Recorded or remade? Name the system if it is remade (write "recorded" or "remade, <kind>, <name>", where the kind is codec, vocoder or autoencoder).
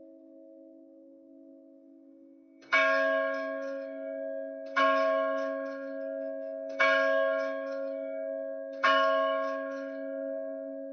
remade, codec, DAC